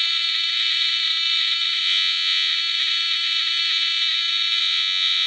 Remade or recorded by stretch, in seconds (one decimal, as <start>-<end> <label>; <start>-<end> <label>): 0.0-1.8 recorded; 1.8-2.5 remade; 2.5-4.6 recorded; 4.6-5.3 remade